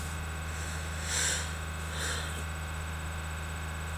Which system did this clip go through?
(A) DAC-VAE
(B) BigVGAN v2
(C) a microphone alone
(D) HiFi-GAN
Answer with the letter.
C